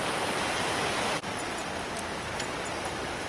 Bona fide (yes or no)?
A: yes